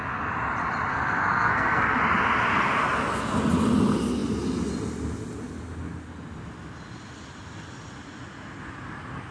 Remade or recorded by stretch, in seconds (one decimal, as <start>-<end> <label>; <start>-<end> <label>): 0.0-0.9 recorded; 0.9-2.0 remade; 2.0-9.3 recorded